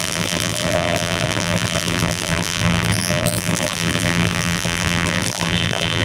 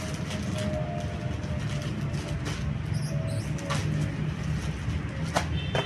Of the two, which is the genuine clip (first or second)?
second